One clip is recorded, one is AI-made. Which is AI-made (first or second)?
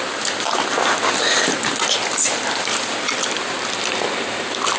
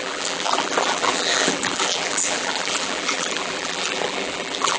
second